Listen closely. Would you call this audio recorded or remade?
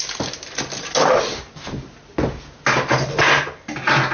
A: recorded